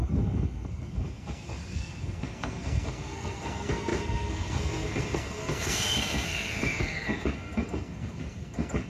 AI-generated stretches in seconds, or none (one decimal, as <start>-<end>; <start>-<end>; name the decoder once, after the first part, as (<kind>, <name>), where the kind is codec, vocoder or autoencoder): 0.0-8.9 (codec, SNAC)